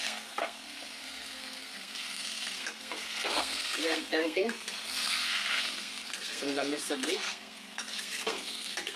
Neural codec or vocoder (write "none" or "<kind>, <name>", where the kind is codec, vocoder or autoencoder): codec, SNAC